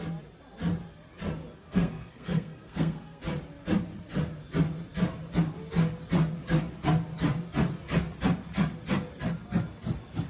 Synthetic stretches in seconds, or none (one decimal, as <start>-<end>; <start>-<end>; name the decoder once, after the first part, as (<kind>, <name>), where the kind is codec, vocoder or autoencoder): 1.6-3.2 (codec, SNAC)